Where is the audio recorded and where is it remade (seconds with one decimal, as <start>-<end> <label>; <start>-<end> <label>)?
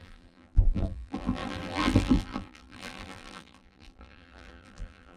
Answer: 0.0-5.2 remade